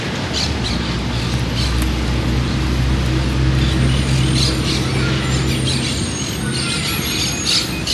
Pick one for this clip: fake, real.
real